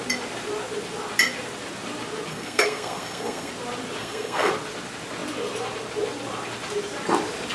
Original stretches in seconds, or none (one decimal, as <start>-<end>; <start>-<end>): 0.0-2.3; 3.5-4.0; 4.5-7.5